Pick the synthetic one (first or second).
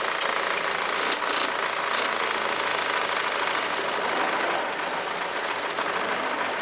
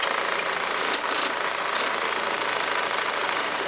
second